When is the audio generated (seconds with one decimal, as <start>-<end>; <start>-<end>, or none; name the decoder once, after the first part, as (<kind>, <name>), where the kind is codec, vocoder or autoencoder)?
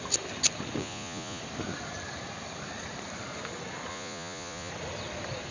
0.8-1.4 (vocoder, Vocos); 3.9-4.7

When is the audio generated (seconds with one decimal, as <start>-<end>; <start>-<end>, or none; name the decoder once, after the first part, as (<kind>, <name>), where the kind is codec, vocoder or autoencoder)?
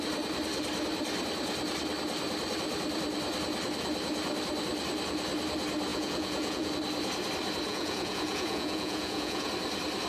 5.9-6.7 (vocoder, Vocos); 7.7-9.5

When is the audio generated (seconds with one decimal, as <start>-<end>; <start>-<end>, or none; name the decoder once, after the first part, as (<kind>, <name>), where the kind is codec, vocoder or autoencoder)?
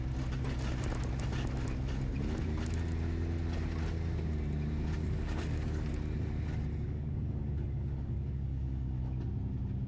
5.0-5.9 (codec, DAC); 6.7-9.0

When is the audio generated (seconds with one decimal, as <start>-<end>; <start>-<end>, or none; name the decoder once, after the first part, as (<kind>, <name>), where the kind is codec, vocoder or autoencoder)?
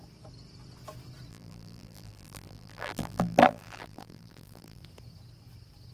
1.3-4.8 (vocoder, BigVGAN v2)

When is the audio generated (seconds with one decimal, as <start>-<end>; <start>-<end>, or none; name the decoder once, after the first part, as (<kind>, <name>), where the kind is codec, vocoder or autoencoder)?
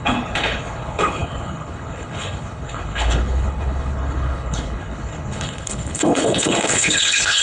0.0-7.4 (codec, HILCodec)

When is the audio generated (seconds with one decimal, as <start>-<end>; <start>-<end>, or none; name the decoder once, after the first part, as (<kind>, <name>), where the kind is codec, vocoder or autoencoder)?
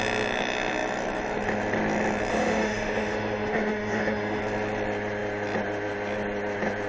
2.3-4.4 (autoencoder, DAC-VAE)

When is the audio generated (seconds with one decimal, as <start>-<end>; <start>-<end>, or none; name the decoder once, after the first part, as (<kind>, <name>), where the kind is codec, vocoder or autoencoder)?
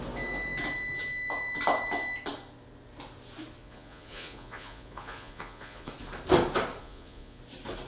3.6-5.9 (vocoder, Vocos); 6.8-7.4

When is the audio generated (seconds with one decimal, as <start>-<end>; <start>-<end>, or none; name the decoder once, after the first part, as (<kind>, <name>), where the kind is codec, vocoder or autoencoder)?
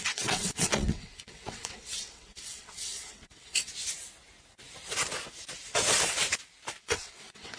0.0-3.7 (vocoder, WaveNeXt); 6.8-7.6